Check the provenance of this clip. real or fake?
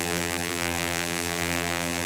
fake